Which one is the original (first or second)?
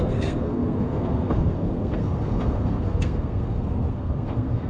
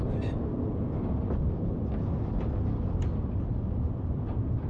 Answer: second